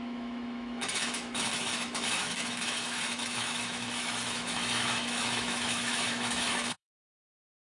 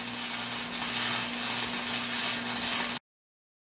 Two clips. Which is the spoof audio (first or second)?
first